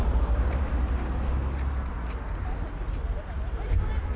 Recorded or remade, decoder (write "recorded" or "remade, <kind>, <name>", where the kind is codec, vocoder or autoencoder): recorded